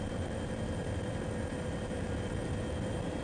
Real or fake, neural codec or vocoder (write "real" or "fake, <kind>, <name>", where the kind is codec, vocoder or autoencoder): fake, vocoder, BigVGAN v2